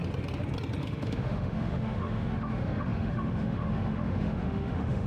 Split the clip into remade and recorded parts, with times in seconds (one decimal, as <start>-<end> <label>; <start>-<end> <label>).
0.0-0.8 recorded; 0.8-5.1 remade